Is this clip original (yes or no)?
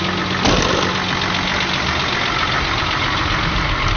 yes